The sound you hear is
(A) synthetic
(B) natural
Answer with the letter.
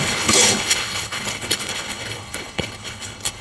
A